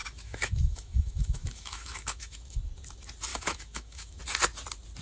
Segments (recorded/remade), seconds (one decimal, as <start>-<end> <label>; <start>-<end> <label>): 0.0-2.6 remade; 2.6-3.3 recorded; 3.3-4.2 remade; 4.2-5.0 recorded